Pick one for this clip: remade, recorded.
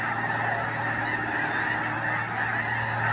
recorded